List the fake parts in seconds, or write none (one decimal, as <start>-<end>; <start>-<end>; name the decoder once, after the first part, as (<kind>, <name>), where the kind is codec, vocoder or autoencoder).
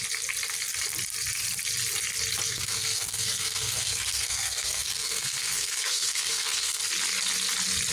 2.5-6.8 (codec, SNAC)